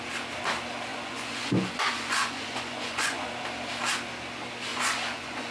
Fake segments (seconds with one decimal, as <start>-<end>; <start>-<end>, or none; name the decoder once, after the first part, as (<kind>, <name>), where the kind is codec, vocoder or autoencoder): 0.9-3.3 (vocoder, Vocos); 4.7-5.5